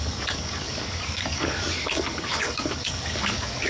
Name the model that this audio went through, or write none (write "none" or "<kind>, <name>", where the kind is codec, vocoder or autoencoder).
codec, DAC